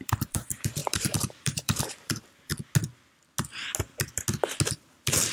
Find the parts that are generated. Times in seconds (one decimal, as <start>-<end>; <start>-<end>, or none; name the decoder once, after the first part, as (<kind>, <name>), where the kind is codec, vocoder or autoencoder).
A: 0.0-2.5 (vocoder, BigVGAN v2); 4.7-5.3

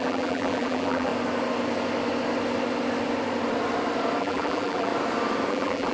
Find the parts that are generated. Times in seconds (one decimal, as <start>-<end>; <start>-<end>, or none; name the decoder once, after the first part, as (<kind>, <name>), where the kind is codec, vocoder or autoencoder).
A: 0.0-1.1 (vocoder, BigVGAN v2); 4.2-4.9; 5.5-5.9

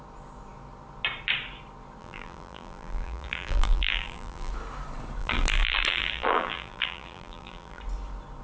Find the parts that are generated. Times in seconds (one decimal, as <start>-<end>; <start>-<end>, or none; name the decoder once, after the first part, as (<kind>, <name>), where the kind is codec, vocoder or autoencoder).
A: 2.0-4.5 (vocoder, BigVGAN v2); 5.2-7.8

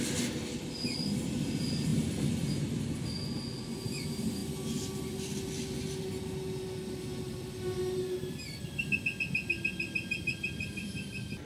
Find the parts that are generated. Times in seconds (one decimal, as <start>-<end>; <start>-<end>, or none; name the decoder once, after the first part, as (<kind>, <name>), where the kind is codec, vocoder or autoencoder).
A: none